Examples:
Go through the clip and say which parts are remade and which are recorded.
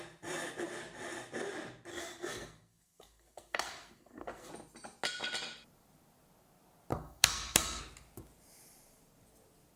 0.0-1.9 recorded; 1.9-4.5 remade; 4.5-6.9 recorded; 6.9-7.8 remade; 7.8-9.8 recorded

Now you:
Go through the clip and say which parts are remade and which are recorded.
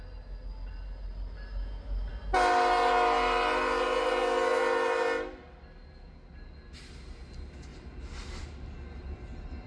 0.0-9.7 recorded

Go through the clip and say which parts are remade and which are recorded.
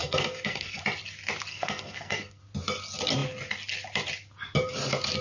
0.0-0.8 remade; 0.8-1.5 recorded; 1.5-2.4 remade; 2.4-5.2 recorded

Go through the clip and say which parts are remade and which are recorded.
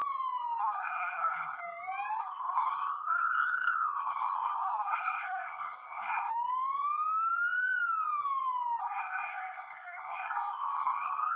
0.0-0.6 recorded; 0.6-1.6 remade; 1.6-2.2 recorded; 2.2-6.3 remade; 6.3-8.8 recorded; 8.8-11.4 remade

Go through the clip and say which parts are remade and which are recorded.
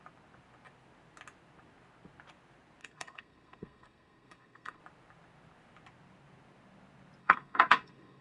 0.0-2.8 recorded; 2.8-4.8 remade; 4.8-7.2 recorded; 7.2-8.2 remade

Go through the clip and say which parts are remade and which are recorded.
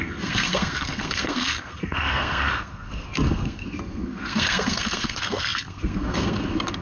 0.0-6.8 remade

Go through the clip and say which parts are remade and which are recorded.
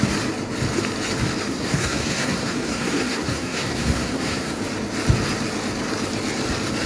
0.0-1.5 recorded; 1.5-4.6 remade; 4.6-6.9 recorded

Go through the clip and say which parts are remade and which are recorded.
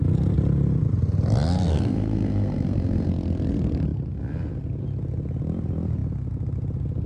0.0-1.7 recorded; 1.7-3.1 remade; 3.1-7.1 recorded